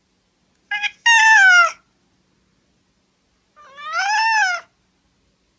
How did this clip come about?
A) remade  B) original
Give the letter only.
B